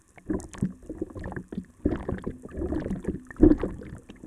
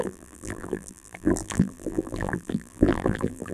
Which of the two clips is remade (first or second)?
second